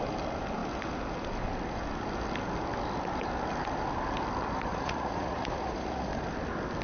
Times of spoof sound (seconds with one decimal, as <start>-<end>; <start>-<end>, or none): 4.7-6.1